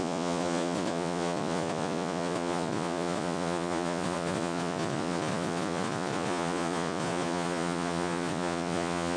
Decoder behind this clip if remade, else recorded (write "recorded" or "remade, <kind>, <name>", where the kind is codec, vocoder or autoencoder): remade, vocoder, Vocos